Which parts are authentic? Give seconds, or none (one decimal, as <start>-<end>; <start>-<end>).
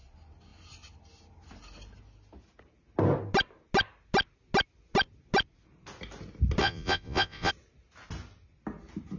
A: 0.0-6.6; 7.5-9.2